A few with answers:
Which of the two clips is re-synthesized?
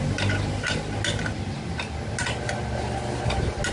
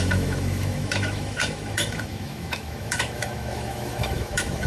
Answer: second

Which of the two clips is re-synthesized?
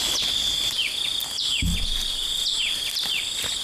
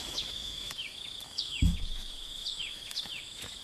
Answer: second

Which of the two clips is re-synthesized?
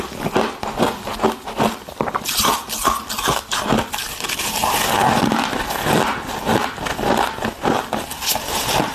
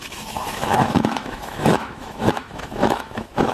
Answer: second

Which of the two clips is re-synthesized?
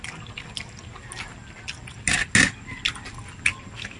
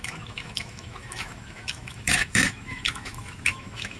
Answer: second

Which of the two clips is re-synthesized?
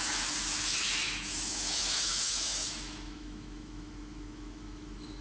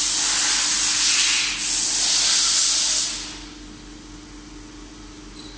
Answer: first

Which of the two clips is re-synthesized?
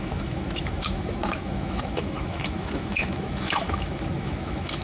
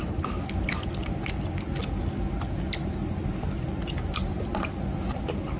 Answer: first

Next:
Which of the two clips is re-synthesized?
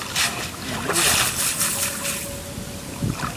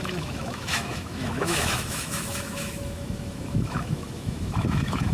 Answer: second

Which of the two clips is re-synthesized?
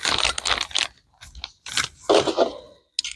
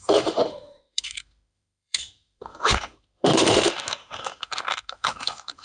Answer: second